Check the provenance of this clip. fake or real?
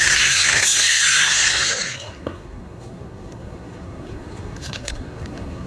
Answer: fake